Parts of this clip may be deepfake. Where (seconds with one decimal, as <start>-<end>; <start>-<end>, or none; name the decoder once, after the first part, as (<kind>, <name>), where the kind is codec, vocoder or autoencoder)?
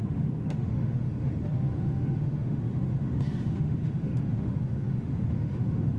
0.0-6.0 (autoencoder, DAC-VAE)